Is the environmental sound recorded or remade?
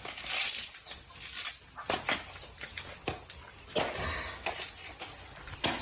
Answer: recorded